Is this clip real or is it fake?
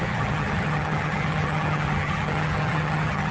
fake